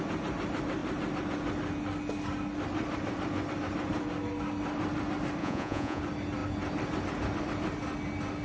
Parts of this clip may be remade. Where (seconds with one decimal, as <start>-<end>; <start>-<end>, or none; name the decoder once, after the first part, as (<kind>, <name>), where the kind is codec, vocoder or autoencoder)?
5.4-6.0 (vocoder, Vocos)